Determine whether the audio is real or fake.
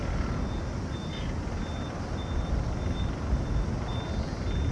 real